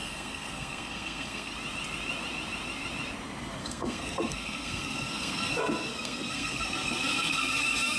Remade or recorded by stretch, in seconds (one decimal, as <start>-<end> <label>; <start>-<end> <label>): 0.0-1.5 remade; 1.5-3.6 recorded; 3.6-8.0 remade